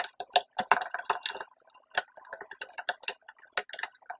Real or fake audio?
real